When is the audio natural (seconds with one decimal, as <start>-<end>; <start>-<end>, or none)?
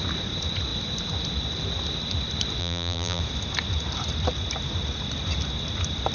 0.0-2.6; 3.2-6.1